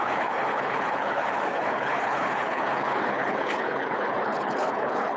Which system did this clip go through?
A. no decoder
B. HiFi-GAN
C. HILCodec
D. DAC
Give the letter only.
C